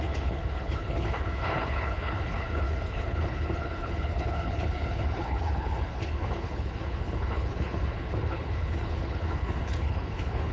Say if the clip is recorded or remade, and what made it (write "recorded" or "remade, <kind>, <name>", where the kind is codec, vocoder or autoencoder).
remade, codec, HILCodec